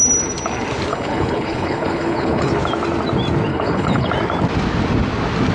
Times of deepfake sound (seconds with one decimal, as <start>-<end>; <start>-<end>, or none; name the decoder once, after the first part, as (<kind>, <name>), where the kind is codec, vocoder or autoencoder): 0.9-2.5 (codec, HILCodec); 3.5-4.1